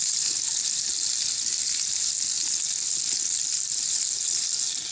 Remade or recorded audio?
recorded